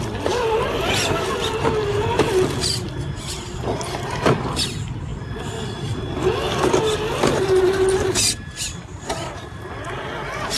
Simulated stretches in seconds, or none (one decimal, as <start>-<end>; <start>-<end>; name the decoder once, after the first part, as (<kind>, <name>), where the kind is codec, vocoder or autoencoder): none